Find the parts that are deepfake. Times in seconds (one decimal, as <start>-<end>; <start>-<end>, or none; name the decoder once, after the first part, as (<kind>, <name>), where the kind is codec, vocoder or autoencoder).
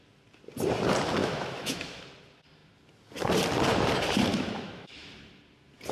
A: 1.2-2.0 (autoencoder, DAC-VAE); 4.3-5.1